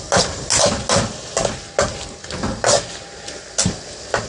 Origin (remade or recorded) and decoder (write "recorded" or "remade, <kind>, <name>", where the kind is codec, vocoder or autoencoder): recorded